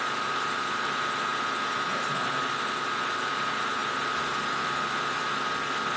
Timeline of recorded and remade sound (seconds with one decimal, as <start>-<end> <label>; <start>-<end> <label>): 0.0-6.0 recorded

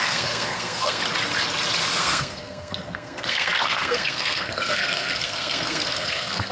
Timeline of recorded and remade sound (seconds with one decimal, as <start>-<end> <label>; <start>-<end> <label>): 0.0-1.0 remade; 1.0-2.0 recorded; 2.0-6.5 remade

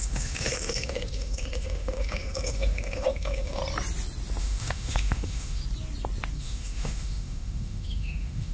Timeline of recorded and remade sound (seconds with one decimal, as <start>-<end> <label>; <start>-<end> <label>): 0.0-3.6 remade; 3.6-4.4 recorded; 4.4-5.6 remade; 5.6-6.4 recorded; 6.4-8.5 remade

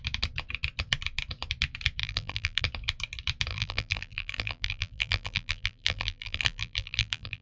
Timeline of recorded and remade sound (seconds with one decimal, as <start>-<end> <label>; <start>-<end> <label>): 0.0-2.0 recorded; 2.0-2.6 remade; 2.6-3.5 recorded; 3.5-7.4 remade

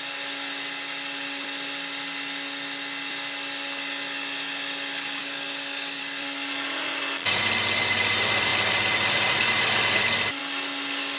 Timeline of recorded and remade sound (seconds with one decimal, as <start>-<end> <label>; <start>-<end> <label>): 0.0-5.2 recorded; 5.2-6.0 remade; 6.0-11.2 recorded

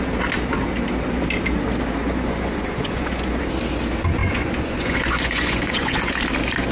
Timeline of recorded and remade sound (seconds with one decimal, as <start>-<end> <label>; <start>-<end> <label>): 0.0-2.0 recorded; 2.0-3.4 remade; 3.4-4.2 recorded; 4.2-6.1 remade; 6.1-6.7 recorded

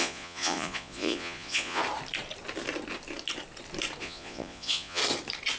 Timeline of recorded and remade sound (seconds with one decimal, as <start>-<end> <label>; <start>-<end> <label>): 0.0-1.8 remade; 1.8-4.0 recorded; 4.0-5.0 remade; 5.0-5.6 recorded

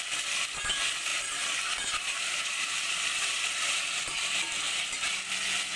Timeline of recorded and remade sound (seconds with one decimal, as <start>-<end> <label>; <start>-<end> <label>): 0.0-5.8 recorded